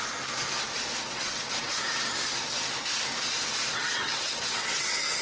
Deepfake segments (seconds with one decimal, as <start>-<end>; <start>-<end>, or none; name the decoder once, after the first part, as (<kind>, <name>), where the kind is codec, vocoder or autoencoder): 1.1-1.7 (vocoder, WaveNeXt); 3.7-5.2